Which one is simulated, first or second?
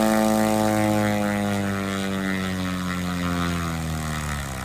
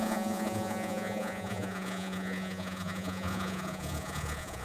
second